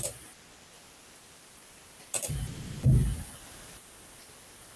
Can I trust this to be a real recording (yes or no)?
yes